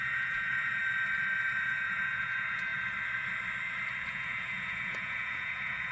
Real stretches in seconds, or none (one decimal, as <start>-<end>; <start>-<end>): 0.8-1.6; 2.7-4.1